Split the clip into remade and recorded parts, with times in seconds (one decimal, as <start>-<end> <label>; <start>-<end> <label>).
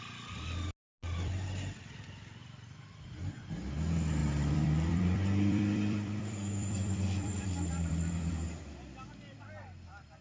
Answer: 0.0-2.4 recorded; 2.4-3.4 remade; 3.4-4.2 recorded; 4.2-8.3 remade; 8.3-10.2 recorded